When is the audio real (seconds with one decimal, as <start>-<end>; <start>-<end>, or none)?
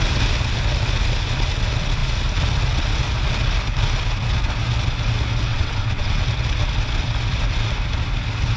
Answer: 0.0-5.5; 6.2-8.6